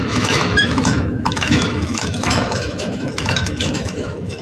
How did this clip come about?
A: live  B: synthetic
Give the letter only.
B